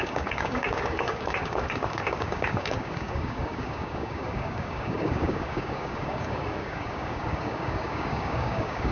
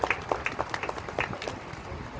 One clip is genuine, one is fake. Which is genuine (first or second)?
second